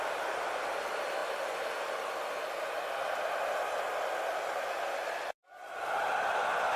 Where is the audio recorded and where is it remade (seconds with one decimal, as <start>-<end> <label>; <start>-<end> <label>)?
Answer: 0.0-6.8 recorded